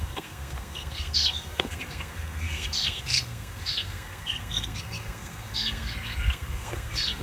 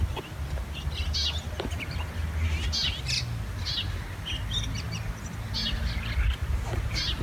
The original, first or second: second